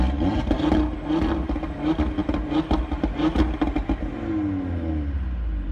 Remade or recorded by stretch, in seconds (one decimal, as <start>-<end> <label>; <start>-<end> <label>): 0.0-5.7 recorded